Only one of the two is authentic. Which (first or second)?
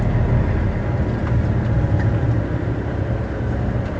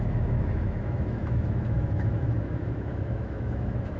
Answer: first